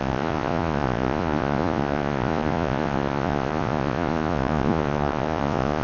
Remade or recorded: remade